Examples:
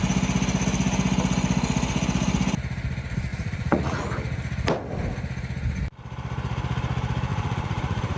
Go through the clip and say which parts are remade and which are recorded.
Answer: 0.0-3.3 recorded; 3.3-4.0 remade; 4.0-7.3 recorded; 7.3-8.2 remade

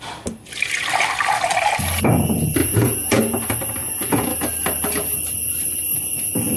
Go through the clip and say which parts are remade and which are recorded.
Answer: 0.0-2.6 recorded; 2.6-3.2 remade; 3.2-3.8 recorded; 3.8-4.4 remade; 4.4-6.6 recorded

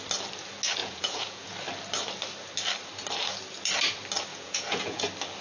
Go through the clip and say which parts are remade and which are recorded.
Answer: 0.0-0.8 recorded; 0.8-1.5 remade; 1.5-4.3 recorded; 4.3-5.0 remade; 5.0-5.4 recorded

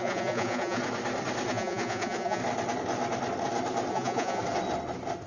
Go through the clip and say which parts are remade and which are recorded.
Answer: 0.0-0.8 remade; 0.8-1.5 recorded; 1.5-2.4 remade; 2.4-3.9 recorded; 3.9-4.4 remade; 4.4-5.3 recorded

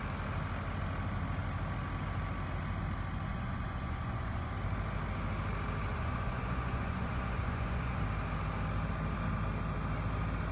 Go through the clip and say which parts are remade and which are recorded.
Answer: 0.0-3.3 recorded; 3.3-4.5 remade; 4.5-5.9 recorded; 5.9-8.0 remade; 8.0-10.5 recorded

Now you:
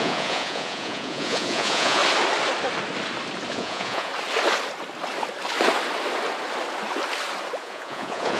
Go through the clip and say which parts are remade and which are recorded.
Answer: 0.0-2.0 remade; 2.0-3.5 recorded; 3.5-4.1 remade; 4.1-7.6 recorded; 7.6-8.4 remade

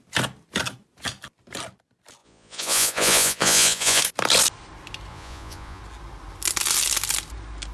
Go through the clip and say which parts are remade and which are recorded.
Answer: 0.0-2.2 recorded; 2.2-4.0 remade; 4.0-5.1 recorded; 5.1-5.8 remade; 5.8-7.7 recorded